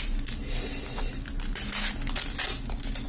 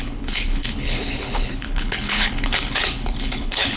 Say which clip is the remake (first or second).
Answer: second